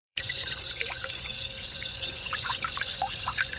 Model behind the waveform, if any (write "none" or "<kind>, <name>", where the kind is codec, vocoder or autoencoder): vocoder, Vocos